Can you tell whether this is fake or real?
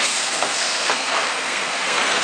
fake